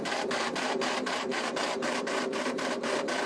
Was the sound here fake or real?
fake